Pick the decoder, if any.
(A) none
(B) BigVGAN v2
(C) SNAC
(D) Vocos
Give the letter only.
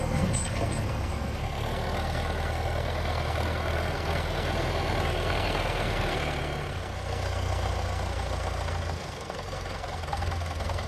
C